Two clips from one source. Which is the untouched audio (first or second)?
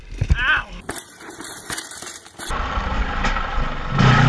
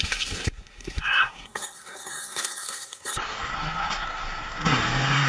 first